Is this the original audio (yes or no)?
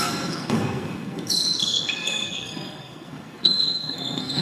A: no